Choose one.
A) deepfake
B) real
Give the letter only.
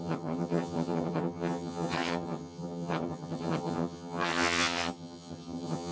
A